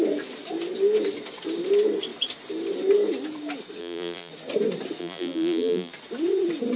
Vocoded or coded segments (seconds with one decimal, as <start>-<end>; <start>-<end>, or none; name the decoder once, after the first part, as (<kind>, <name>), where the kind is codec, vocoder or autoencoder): 3.8-4.3 (vocoder, BigVGAN v2); 5.0-5.9